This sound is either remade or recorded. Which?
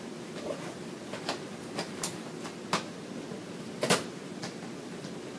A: recorded